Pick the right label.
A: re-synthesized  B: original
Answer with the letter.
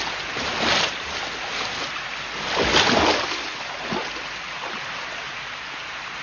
B